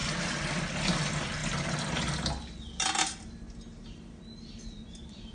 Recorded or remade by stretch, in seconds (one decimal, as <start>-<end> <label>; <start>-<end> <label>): 0.0-0.5 recorded; 0.5-1.4 remade; 1.4-4.6 recorded; 4.6-5.3 remade